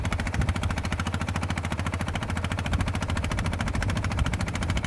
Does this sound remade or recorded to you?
remade